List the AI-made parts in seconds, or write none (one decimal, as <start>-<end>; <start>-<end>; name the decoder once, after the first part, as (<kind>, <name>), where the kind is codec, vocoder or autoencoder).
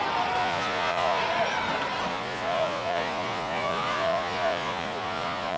0.4-1.2 (vocoder, Vocos); 2.1-5.6